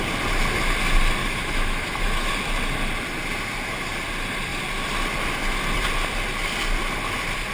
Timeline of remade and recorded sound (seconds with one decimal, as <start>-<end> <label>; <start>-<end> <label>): 0.0-1.2 recorded; 1.2-2.3 remade; 2.3-7.5 recorded